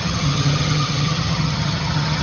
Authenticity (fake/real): fake